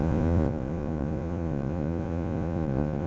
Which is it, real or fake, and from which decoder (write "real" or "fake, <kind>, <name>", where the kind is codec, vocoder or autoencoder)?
fake, vocoder, Vocos